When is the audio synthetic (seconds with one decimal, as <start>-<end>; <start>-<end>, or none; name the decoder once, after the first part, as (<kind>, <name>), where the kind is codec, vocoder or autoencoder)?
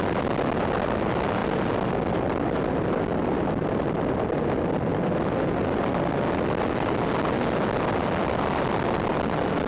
none